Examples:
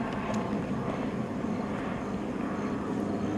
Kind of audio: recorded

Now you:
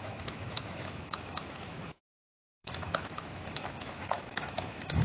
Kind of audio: remade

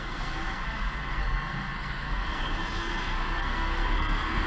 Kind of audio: remade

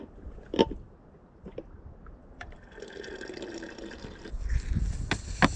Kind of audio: recorded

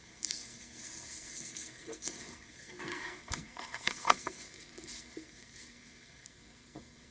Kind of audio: remade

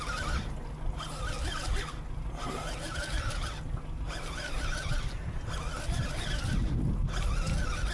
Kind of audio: recorded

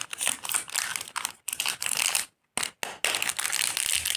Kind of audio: recorded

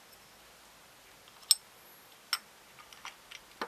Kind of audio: recorded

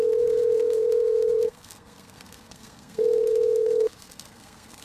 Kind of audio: remade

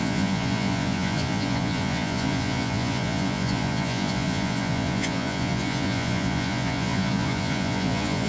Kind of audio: remade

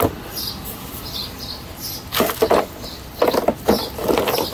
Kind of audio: recorded